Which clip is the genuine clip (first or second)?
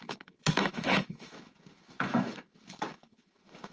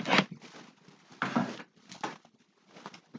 second